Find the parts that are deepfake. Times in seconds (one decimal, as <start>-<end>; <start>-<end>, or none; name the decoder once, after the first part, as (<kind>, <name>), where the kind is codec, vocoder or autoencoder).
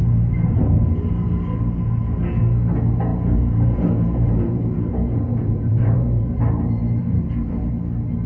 0.0-1.0 (vocoder, Vocos); 3.1-6.4; 7.0-7.7